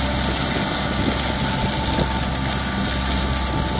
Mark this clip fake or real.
real